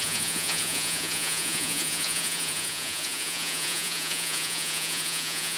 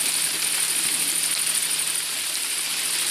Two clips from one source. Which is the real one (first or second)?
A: second